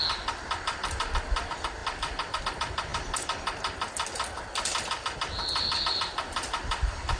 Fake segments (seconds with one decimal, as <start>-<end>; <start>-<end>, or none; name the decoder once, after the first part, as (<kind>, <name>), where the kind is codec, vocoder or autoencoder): none